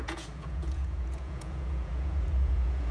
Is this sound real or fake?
fake